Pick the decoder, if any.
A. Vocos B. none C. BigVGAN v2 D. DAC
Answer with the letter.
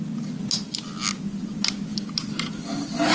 B